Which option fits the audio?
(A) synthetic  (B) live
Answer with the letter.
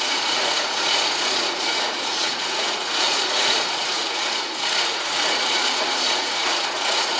A